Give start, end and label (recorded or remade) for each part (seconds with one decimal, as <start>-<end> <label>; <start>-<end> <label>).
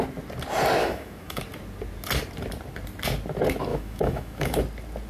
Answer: 0.0-0.8 recorded; 0.8-1.4 remade; 1.4-3.7 recorded; 3.7-4.6 remade; 4.6-5.1 recorded